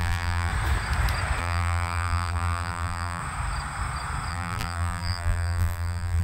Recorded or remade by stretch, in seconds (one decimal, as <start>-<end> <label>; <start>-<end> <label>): 0.0-0.5 remade; 0.5-1.4 recorded; 1.4-3.2 remade; 3.2-4.3 recorded; 4.3-6.2 remade